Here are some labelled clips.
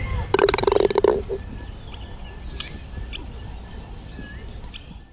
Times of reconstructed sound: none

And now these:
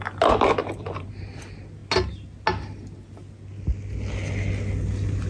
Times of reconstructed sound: 0.6-1.3